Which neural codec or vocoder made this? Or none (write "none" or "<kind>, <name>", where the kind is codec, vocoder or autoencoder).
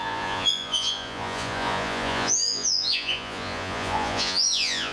vocoder, Vocos